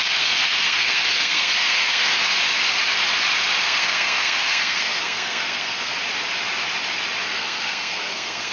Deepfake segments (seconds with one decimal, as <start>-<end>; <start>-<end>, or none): 0.0-2.3; 3.6-5.9; 7.3-8.5